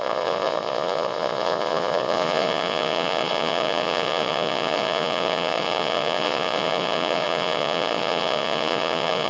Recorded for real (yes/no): no